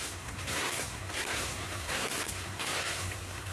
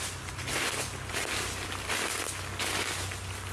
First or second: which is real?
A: second